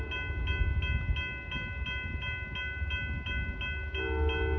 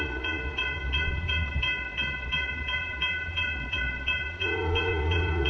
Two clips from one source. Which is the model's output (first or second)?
second